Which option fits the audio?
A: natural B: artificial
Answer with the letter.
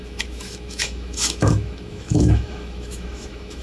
B